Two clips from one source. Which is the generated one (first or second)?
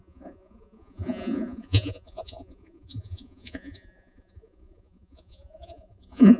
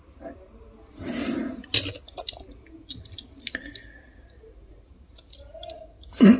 first